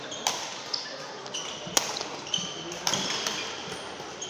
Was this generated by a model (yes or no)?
no